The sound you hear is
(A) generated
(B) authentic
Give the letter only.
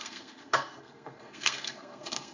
A